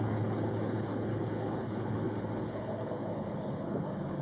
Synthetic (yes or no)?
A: yes